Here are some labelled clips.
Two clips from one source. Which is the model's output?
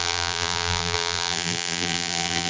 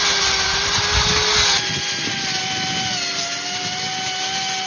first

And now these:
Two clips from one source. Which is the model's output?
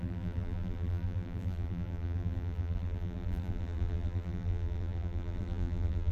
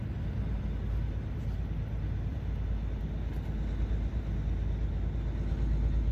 first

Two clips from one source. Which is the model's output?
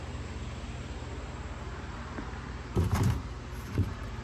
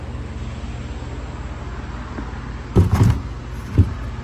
first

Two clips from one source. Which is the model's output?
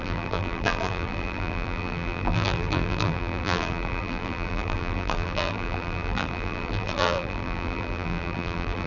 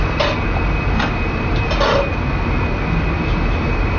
first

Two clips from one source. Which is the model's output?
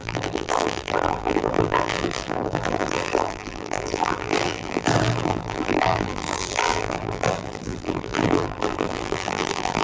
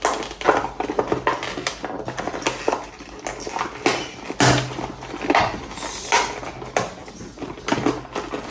first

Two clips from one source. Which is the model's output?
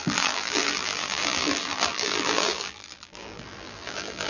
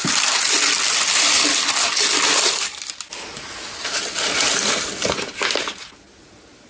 first